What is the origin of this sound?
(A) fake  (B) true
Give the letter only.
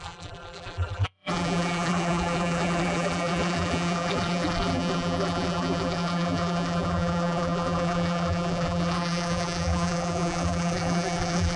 A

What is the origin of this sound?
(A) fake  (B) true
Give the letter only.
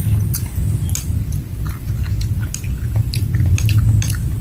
B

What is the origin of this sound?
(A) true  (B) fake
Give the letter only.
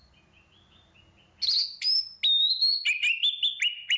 A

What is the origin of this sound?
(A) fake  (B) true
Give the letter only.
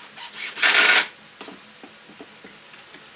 B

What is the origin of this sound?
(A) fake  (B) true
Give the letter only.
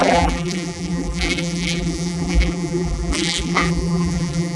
A